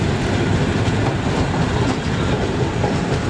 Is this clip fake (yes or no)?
no